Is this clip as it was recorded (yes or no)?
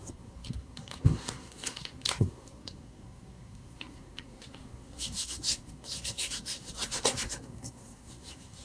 no